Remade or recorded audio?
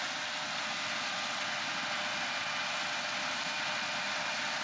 recorded